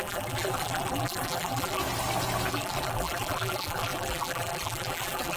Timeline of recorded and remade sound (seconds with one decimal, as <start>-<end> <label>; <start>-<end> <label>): 0.0-1.8 remade; 1.8-2.5 recorded; 2.5-5.4 remade